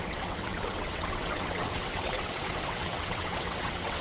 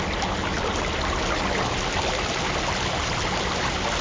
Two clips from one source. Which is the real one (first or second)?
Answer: second